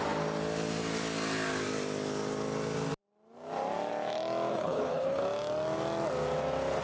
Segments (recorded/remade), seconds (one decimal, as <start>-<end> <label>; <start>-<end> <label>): 0.0-4.5 recorded; 4.5-5.2 remade; 5.2-6.8 recorded